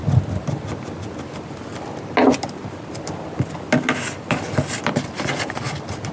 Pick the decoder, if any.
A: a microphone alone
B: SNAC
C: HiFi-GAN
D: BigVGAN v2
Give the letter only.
A